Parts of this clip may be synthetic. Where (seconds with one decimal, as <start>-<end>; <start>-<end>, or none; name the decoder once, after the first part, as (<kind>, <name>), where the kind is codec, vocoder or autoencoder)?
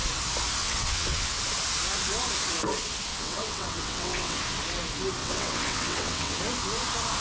0.6-1.4 (vocoder, WaveNeXt); 3.1-4.4; 5.2-6.4